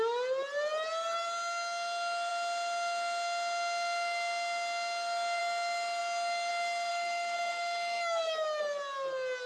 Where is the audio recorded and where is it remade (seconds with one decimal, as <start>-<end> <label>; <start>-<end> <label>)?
0.0-6.9 recorded; 6.9-8.6 remade; 8.6-9.5 recorded